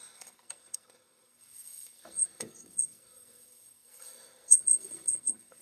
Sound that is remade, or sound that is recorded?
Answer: remade